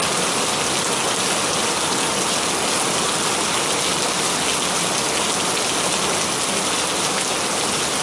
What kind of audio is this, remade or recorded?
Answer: recorded